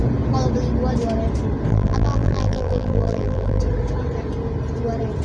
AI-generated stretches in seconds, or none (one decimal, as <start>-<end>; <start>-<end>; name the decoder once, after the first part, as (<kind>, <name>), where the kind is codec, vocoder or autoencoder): 1.7-3.6 (vocoder, BigVGAN v2)